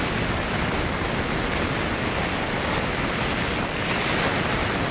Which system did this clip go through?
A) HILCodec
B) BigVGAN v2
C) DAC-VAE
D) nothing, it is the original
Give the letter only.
D